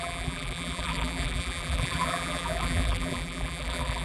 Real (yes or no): no